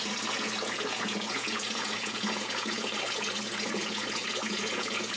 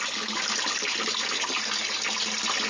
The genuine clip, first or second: second